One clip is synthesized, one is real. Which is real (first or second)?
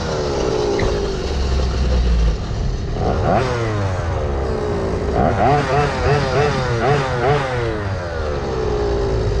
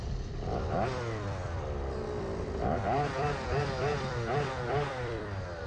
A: first